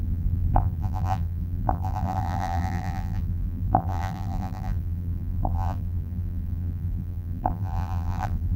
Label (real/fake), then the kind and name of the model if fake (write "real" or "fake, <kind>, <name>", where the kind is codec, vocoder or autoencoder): fake, vocoder, BigVGAN v2